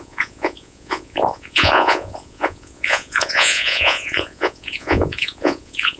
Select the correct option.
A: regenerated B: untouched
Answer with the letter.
A